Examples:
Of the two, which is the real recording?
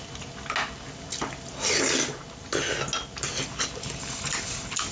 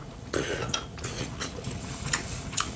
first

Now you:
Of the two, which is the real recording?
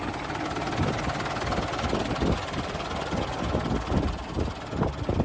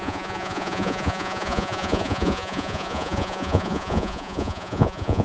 first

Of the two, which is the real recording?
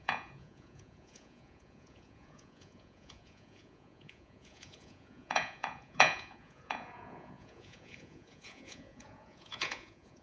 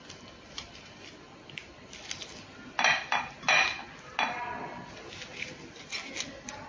second